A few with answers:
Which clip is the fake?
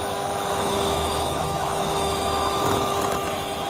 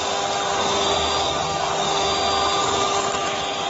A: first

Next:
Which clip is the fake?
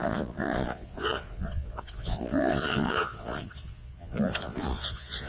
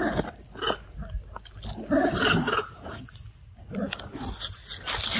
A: first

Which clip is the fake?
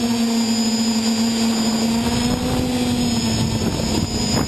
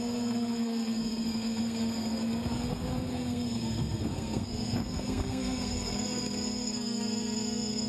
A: second